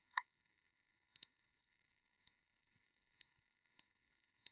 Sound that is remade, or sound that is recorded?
remade